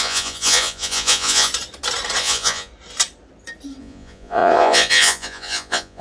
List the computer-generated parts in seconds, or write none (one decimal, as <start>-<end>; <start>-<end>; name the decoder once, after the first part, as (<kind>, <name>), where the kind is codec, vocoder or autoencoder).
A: 0.0-1.5 (vocoder, Vocos); 2.2-2.7; 3.8-6.0